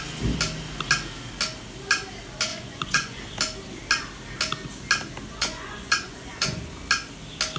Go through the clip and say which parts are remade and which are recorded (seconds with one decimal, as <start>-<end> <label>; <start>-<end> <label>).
0.0-2.5 recorded; 2.5-3.2 remade; 3.2-5.3 recorded; 5.3-6.6 remade; 6.6-7.6 recorded